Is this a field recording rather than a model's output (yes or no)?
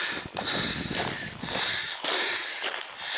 yes